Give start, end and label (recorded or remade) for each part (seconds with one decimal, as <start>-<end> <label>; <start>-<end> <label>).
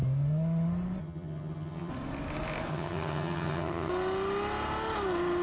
0.0-1.0 recorded; 1.0-1.9 remade; 1.9-2.7 recorded; 2.7-3.9 remade; 3.9-5.4 recorded